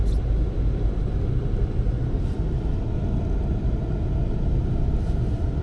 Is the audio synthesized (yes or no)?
no